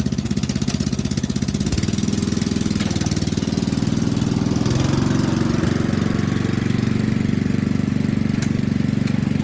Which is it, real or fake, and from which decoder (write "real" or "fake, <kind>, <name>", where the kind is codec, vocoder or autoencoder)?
real